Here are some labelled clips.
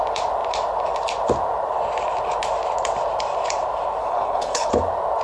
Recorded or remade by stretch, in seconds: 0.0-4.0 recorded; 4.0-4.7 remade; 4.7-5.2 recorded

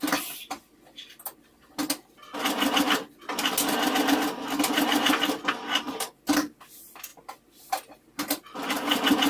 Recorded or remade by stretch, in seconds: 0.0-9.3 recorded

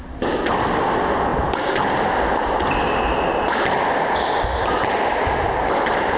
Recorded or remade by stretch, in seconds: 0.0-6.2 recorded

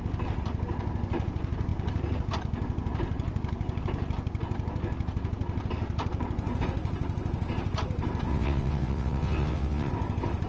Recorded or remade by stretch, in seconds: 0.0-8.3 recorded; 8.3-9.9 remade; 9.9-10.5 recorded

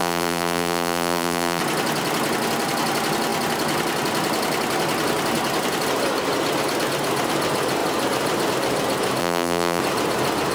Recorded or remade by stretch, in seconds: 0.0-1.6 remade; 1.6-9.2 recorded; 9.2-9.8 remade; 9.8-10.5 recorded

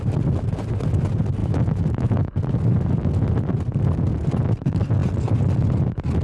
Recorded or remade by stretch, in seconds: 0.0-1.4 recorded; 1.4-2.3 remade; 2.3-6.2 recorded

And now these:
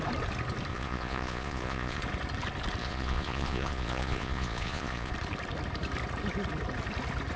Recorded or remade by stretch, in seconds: 0.0-0.7 recorded; 0.7-2.0 remade; 2.0-2.8 recorded; 2.8-5.1 remade; 5.1-7.4 recorded

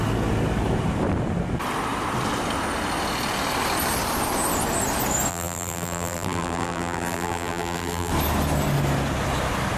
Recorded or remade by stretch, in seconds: 0.0-5.3 recorded; 5.3-8.1 remade; 8.1-9.8 recorded